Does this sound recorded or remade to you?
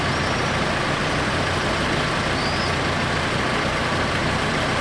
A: recorded